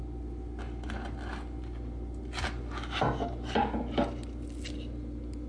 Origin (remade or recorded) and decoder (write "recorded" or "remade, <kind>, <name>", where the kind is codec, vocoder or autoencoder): recorded